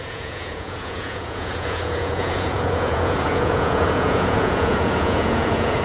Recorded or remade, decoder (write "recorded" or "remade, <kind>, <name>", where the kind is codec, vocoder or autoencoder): remade, vocoder, Vocos